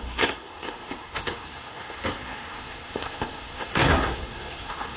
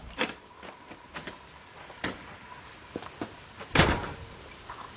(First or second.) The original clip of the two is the second